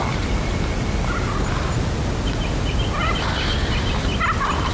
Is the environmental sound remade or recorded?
recorded